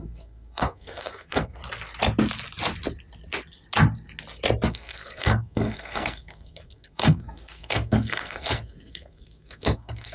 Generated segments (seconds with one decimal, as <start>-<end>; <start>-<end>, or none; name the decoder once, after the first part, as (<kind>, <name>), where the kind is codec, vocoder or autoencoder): 0.0-1.6 (codec, SNAC); 4.7-10.1